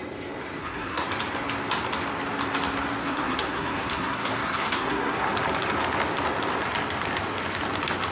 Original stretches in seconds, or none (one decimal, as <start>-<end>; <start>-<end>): 0.0-0.6; 1.1-3.0; 5.3-8.1